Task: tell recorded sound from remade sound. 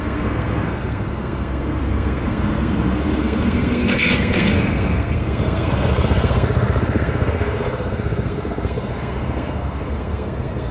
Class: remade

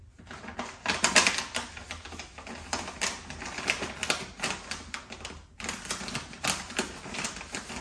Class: recorded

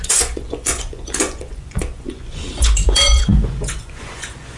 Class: remade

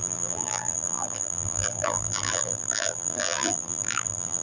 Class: remade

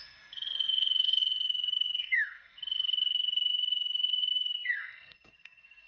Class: remade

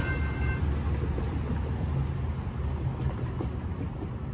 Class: recorded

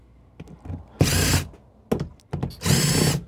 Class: recorded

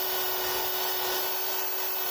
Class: recorded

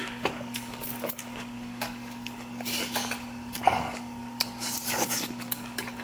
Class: remade